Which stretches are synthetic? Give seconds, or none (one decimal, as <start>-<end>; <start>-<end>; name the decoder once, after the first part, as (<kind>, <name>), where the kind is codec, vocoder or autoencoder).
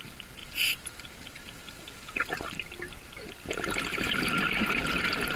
none